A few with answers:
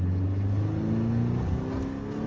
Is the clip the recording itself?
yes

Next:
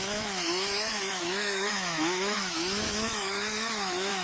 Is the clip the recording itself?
no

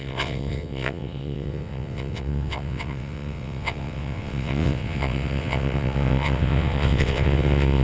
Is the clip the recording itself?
no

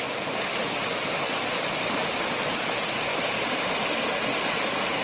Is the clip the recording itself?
yes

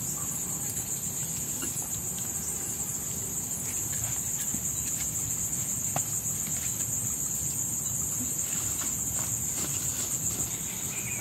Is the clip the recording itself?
yes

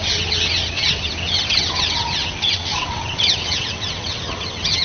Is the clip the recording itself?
no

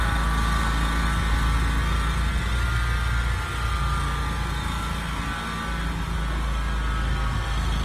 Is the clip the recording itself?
yes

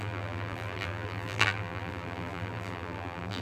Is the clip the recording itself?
no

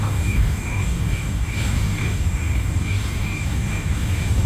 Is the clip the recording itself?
no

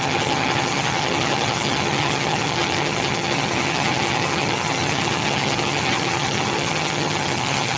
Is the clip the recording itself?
no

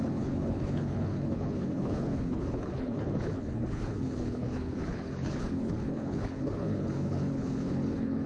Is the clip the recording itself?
no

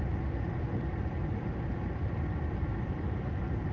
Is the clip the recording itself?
yes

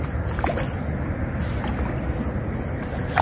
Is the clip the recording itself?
yes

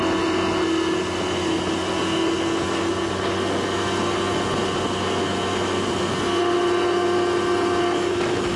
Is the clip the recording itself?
yes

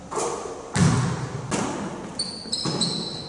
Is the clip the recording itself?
yes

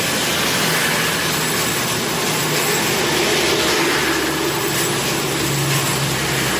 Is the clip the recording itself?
yes